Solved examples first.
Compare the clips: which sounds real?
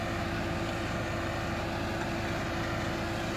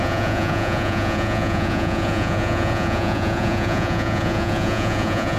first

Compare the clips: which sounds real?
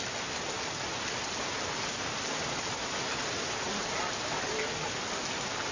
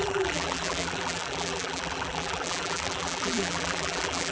first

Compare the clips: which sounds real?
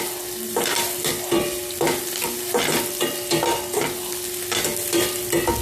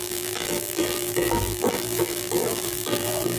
first